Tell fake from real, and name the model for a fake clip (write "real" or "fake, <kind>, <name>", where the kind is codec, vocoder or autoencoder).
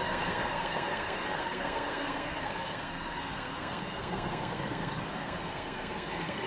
fake, codec, SNAC